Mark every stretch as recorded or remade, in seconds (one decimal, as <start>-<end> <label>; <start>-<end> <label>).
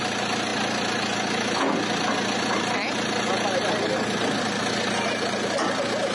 0.0-6.1 recorded